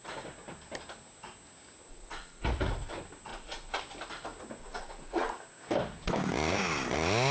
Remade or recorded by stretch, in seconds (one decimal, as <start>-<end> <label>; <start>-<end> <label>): 0.0-1.9 recorded; 1.9-2.9 remade; 2.9-3.3 recorded; 3.3-3.8 remade; 3.8-4.6 recorded; 4.6-5.3 remade; 5.3-7.3 recorded

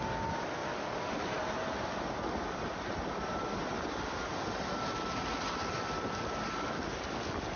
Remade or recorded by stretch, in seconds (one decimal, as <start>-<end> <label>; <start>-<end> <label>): 0.0-7.6 recorded

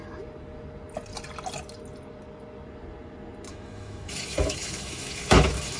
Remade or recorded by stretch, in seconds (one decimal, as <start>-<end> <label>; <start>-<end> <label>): 0.0-3.5 recorded; 3.5-5.8 remade

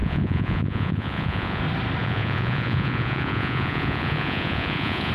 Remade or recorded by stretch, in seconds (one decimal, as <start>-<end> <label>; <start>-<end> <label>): 0.0-1.6 remade; 1.6-2.0 recorded; 2.0-5.1 remade